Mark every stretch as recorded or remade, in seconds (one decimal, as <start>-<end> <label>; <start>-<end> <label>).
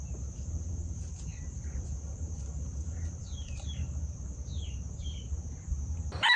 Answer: 0.0-5.7 remade; 5.7-6.4 recorded